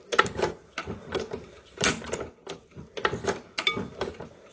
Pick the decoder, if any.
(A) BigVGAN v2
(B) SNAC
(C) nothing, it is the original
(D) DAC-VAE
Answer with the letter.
C